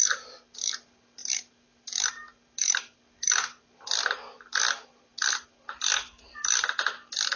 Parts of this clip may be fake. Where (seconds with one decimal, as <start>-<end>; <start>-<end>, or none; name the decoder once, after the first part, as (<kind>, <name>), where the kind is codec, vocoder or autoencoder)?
0.0-7.4 (vocoder, BigVGAN v2)